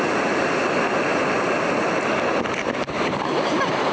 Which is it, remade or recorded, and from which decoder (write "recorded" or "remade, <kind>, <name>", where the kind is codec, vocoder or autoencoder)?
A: recorded